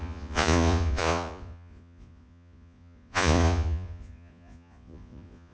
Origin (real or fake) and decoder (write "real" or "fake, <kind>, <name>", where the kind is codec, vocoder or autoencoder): fake, vocoder, Vocos